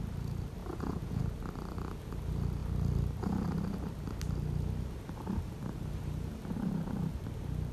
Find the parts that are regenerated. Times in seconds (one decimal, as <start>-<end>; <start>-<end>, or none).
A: 0.6-1.2